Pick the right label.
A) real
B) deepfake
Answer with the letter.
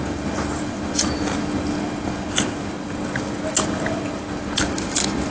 A